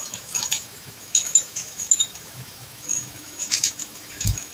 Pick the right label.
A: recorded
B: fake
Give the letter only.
B